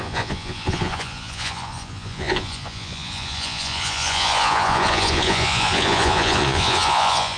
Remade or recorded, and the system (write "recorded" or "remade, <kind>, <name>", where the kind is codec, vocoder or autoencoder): remade, vocoder, Vocos